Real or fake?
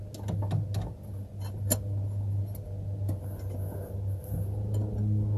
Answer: real